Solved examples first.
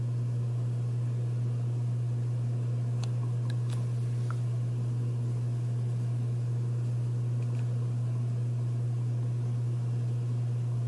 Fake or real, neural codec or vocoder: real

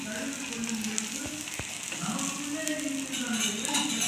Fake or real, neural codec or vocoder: real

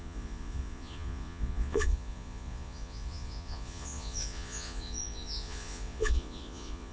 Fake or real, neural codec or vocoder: fake, vocoder, Vocos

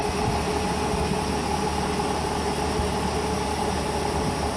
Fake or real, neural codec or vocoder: real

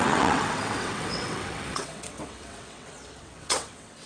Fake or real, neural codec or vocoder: fake, vocoder, WaveNeXt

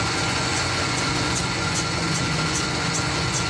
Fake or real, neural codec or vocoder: fake, vocoder, Vocos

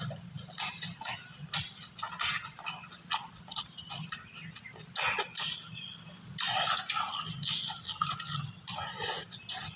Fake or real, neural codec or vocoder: real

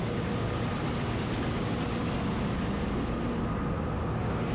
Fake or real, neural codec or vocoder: real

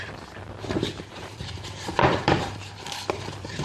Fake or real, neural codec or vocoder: fake, vocoder, BigVGAN v2